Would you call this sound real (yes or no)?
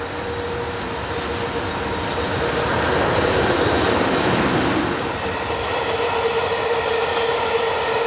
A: yes